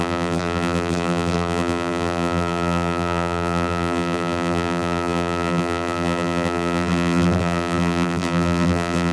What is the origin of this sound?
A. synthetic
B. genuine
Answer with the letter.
A